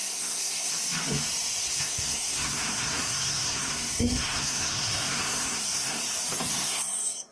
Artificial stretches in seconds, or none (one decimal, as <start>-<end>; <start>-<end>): 0.0-0.7; 1.6-6.0; 6.5-7.3